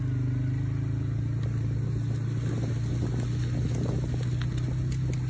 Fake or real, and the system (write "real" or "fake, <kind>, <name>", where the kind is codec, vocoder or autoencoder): real